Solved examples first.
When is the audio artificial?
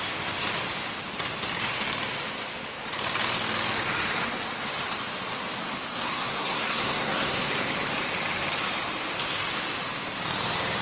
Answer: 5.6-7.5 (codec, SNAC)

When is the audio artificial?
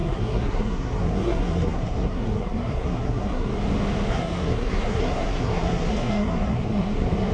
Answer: 0.0-3.5 (codec, SNAC); 4.1-7.3